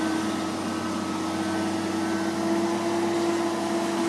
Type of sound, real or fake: real